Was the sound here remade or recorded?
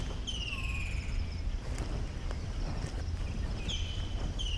recorded